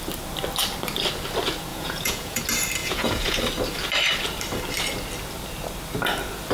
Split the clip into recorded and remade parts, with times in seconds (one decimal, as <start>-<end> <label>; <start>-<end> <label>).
0.0-1.7 recorded; 1.7-2.4 remade; 2.4-2.8 recorded; 2.8-3.4 remade; 3.4-6.5 recorded